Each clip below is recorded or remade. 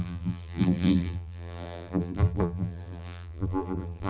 remade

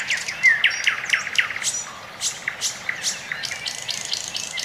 recorded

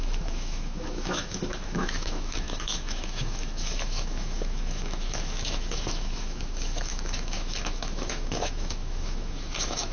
remade